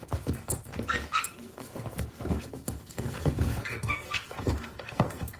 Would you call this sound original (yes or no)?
no